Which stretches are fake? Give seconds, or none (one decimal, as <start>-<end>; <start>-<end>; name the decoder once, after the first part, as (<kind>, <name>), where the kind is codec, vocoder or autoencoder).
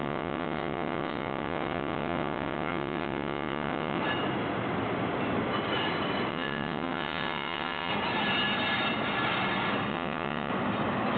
0.0-4.0 (vocoder, WaveNeXt); 6.3-7.9; 9.9-10.5